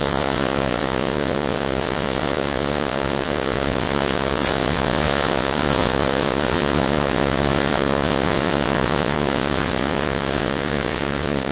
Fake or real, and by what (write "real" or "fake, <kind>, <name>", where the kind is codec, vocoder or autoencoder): fake, vocoder, WaveNeXt